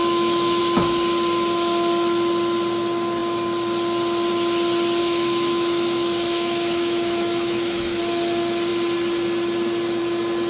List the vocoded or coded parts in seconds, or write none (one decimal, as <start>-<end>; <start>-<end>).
0.0-0.6; 5.0-8.0